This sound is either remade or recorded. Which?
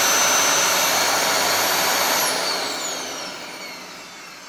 recorded